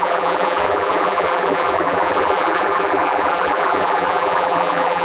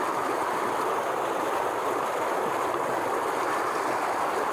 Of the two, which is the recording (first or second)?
second